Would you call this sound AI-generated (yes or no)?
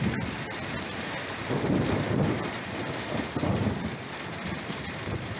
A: no